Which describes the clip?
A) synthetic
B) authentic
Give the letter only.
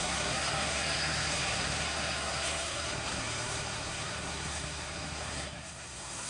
A